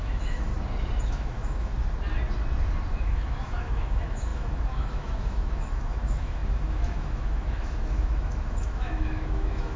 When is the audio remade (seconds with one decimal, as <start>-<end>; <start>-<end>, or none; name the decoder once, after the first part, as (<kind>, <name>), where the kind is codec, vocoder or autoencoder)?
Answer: 0.0-0.5 (autoencoder, DAC-VAE); 1.1-1.7; 2.9-9.8